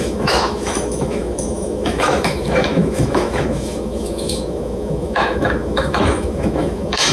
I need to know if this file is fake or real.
fake